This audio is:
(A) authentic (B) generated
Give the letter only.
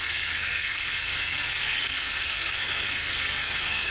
B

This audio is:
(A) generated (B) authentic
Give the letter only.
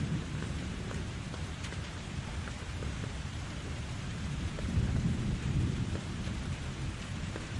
A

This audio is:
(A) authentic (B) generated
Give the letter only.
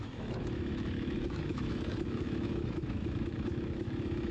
B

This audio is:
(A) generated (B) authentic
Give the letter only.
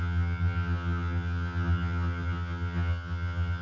A